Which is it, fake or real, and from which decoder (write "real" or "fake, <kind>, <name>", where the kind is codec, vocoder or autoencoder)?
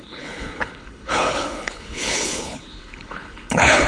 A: fake, codec, HILCodec